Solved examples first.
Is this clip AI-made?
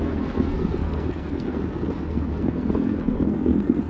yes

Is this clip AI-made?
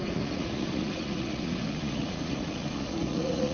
yes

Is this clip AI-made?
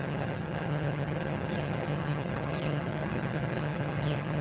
yes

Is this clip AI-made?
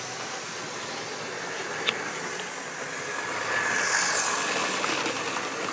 no